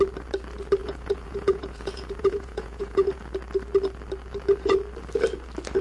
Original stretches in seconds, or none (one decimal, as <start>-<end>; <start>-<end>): 0.0-0.8; 3.2-5.8

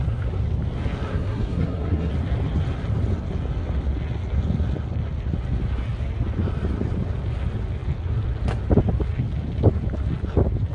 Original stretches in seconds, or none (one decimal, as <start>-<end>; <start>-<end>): 0.0-1.1; 2.1-10.7

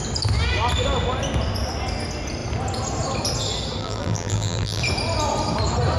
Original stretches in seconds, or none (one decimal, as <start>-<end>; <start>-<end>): 0.0-3.8; 4.8-6.0

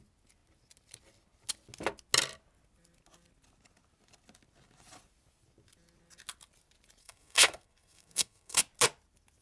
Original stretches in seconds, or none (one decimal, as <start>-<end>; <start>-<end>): 0.0-7.0; 8.6-9.4

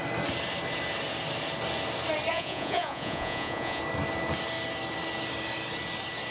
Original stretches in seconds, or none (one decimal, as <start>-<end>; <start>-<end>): 0.0-2.3; 3.8-6.3

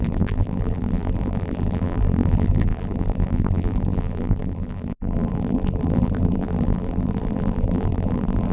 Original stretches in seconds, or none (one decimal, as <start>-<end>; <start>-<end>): none

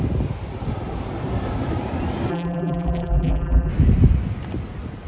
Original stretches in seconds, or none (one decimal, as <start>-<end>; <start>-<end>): 0.0-2.3; 3.7-5.1

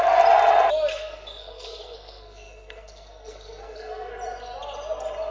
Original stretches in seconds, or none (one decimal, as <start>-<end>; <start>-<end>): 0.0-0.9; 4.1-5.3